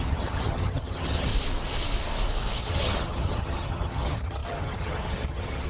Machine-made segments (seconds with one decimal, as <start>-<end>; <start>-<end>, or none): 0.0-1.3; 2.6-5.7